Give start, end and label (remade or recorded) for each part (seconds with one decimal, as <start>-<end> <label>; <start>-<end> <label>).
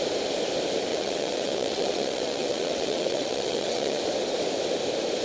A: 0.0-0.9 recorded; 0.9-4.0 remade; 4.0-5.2 recorded